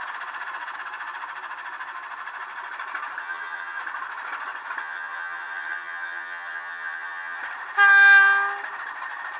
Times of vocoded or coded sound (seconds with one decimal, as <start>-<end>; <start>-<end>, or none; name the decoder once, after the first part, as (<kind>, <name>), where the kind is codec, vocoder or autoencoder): 3.2-3.8 (vocoder, HiFi-GAN); 4.8-7.4